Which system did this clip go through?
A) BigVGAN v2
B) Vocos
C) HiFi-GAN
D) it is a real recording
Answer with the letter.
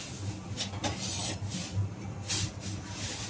D